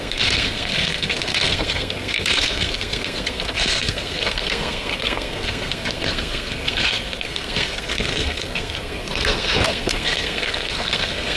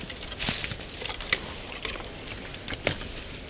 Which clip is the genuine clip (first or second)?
second